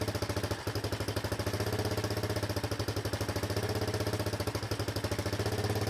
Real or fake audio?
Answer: real